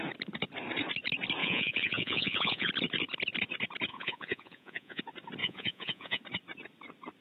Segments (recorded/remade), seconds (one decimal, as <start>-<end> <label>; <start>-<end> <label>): 0.0-1.4 recorded; 1.4-2.7 remade; 2.7-3.9 recorded; 3.9-5.0 remade; 5.0-5.4 recorded; 5.4-6.2 remade; 6.2-7.2 recorded